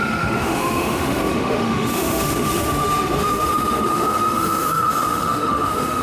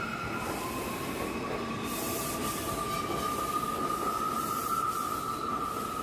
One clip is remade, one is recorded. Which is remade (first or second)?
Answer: first